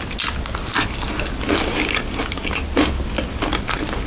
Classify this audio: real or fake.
real